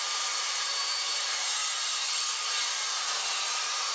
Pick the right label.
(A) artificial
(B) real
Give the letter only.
A